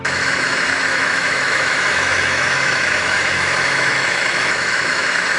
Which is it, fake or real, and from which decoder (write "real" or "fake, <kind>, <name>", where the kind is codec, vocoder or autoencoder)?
fake, autoencoder, DAC-VAE